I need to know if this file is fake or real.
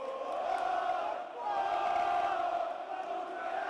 real